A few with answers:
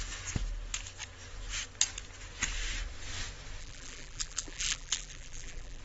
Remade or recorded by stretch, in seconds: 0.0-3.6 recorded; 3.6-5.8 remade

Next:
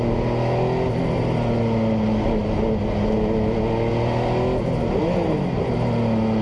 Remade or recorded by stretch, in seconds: 0.0-6.4 recorded